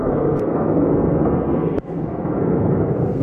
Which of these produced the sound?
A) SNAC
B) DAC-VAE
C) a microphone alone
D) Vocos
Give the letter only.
A